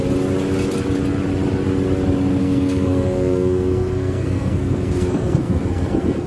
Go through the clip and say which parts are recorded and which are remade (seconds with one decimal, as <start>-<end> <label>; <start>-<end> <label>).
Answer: 0.0-2.4 recorded; 2.4-6.3 remade

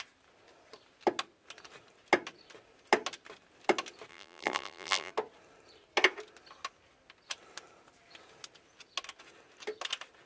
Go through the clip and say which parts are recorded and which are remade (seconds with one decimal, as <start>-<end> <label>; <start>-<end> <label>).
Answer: 0.0-4.1 recorded; 4.1-5.1 remade; 5.1-10.3 recorded